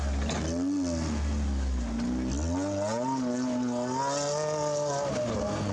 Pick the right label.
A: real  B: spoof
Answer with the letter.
A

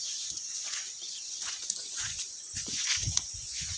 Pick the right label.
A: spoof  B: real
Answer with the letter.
A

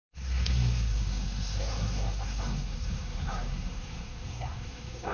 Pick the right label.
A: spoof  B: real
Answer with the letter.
A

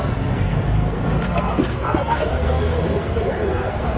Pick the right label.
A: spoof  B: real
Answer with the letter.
A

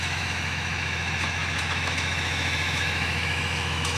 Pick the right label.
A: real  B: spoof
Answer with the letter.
B